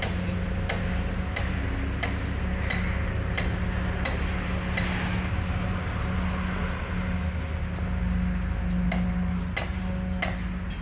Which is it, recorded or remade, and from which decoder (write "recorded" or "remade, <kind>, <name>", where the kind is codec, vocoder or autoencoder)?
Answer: recorded